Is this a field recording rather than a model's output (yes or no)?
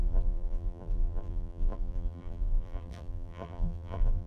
no